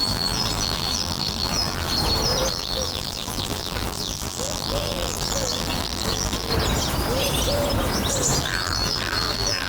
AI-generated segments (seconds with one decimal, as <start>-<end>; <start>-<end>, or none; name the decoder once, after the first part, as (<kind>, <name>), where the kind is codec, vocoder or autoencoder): 0.0-1.9 (vocoder, BigVGAN v2); 2.5-6.5; 8.4-9.7